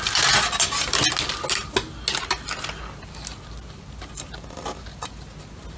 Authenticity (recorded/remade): recorded